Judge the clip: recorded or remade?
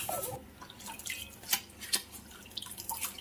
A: recorded